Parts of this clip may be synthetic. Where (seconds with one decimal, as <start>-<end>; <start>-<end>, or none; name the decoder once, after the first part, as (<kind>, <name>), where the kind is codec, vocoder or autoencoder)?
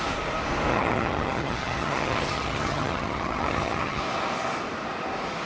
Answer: 0.7-4.0 (vocoder, HiFi-GAN)